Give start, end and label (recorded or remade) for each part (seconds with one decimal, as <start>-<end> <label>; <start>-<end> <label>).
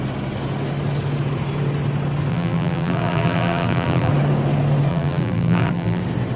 0.0-2.3 recorded; 2.3-4.1 remade; 4.1-4.9 recorded; 4.9-6.0 remade; 6.0-6.4 recorded